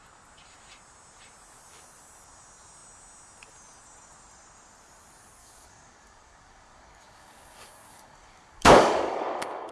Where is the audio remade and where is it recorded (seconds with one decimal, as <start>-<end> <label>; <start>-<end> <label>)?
0.0-5.4 recorded; 5.4-9.7 remade